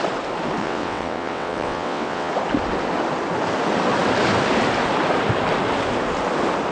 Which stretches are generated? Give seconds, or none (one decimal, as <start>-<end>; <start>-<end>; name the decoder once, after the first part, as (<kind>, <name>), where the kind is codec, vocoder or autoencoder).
0.6-2.3 (vocoder, WaveNeXt)